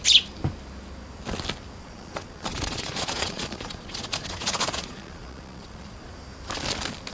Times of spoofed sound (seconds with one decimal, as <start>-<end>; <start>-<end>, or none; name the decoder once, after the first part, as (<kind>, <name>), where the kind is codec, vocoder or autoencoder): 1.8-6.1 (vocoder, Vocos)